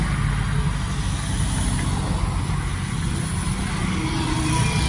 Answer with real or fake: real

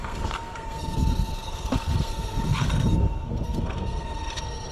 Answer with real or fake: fake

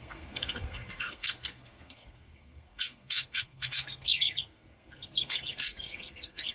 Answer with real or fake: fake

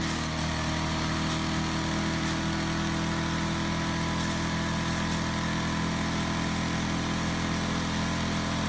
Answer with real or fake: real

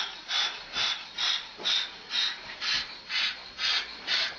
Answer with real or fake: real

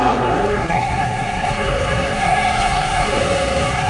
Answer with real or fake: fake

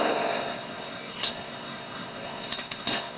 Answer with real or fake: fake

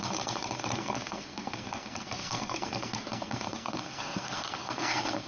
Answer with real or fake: fake